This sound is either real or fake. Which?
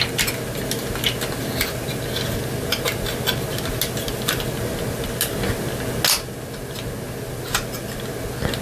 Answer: real